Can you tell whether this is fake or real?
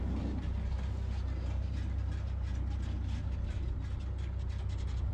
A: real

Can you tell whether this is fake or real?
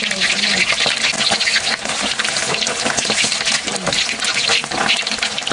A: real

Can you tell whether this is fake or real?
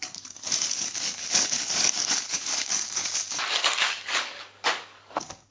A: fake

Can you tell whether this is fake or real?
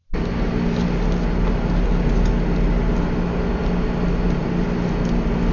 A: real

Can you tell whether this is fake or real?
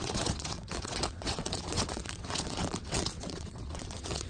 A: fake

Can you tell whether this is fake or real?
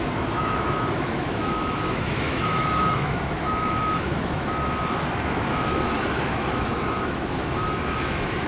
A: fake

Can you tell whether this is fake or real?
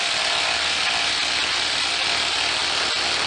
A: real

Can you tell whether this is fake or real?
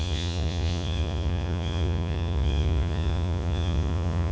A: fake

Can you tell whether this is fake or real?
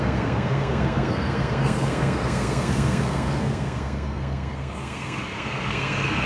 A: fake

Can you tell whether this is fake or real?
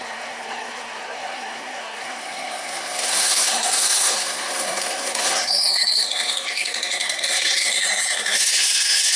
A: fake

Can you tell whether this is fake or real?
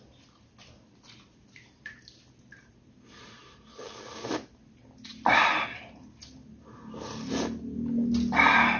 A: real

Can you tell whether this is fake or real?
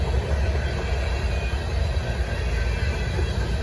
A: real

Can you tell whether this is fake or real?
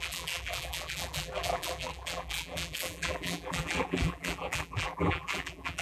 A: fake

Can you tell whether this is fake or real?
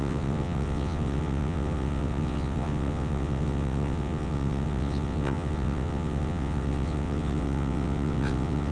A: fake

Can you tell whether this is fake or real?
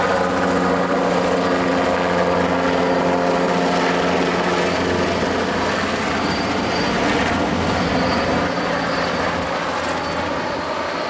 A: real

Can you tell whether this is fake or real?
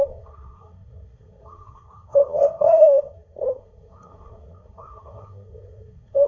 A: fake